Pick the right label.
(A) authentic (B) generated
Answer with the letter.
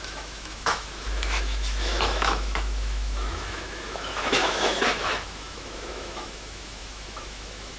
B